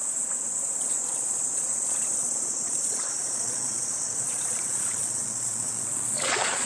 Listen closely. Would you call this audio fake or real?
fake